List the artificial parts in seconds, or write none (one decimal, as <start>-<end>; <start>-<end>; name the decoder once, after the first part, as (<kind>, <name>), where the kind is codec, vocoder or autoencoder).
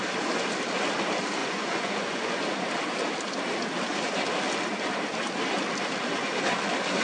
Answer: 1.4-2.4 (vocoder, Vocos)